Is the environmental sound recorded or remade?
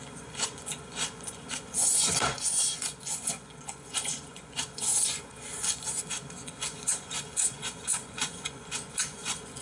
remade